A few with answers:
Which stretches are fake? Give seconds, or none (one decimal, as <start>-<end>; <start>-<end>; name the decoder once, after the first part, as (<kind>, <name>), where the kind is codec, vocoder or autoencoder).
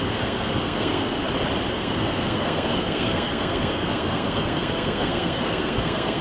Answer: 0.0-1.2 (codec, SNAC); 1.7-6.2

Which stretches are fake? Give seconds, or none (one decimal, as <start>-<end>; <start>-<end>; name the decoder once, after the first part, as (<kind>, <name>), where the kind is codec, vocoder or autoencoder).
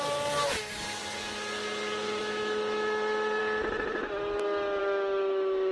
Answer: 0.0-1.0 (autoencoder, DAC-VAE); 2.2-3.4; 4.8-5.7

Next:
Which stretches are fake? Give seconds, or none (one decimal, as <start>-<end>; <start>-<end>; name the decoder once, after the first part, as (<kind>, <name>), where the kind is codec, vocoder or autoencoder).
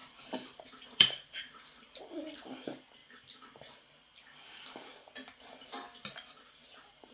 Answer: 0.0-2.0 (vocoder, BigVGAN v2)